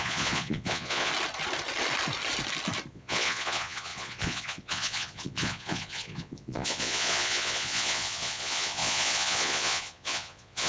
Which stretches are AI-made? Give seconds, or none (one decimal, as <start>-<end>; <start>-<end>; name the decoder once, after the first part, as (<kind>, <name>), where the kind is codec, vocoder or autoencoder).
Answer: 0.0-1.1 (vocoder, Vocos); 2.9-10.7

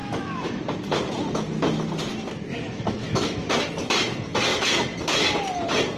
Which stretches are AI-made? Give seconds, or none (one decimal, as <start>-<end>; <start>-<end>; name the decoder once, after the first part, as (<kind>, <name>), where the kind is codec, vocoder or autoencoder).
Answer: 0.0-0.6 (autoencoder, DAC-VAE); 2.5-3.5

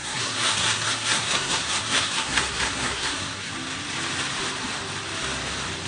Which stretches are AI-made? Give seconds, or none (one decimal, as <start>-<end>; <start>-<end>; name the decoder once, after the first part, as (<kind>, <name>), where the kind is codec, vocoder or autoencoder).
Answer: 0.0-3.5 (codec, SNAC)

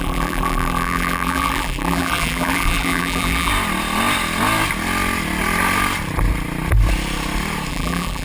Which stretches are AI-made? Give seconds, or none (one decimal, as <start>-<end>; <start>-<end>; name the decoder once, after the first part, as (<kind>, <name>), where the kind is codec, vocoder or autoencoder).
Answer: 0.0-3.5 (vocoder, BigVGAN v2); 7.7-8.2

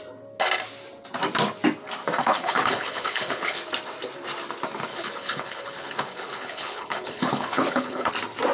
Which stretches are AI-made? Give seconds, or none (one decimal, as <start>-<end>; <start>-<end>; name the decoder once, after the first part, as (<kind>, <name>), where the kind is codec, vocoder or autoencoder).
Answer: 2.2-3.6 (codec, HILCodec); 4.9-8.1

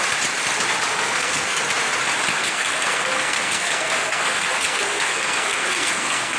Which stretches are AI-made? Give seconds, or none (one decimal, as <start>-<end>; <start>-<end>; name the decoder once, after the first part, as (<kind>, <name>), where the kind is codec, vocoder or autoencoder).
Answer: 0.9-1.6 (codec, SNAC); 2.3-6.4

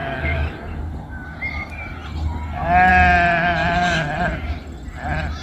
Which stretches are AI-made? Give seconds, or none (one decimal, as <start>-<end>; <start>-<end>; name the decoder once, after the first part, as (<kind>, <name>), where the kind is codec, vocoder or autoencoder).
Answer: 0.0-1.4 (codec, DAC)